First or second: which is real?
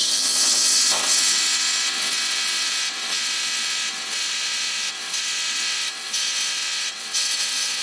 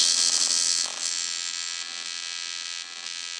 second